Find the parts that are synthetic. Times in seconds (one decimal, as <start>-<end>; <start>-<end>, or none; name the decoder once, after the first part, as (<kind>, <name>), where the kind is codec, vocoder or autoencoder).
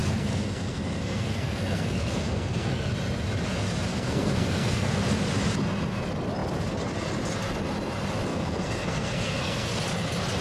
0.0-2.9 (codec, SNAC); 3.9-5.0; 8.3-9.8